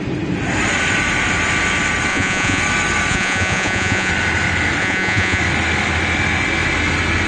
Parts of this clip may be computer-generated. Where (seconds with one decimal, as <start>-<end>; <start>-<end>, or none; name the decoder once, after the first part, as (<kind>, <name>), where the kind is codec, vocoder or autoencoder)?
2.1-2.6 (vocoder, Vocos); 3.1-4.1; 4.8-5.4